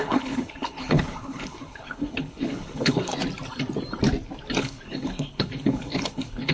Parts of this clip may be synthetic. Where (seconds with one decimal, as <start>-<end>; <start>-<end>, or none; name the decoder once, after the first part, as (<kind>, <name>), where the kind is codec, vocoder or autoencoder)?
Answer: 0.0-3.1 (codec, HILCodec); 4.6-6.5